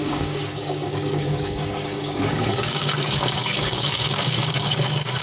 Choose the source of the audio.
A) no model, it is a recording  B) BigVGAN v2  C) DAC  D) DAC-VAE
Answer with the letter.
C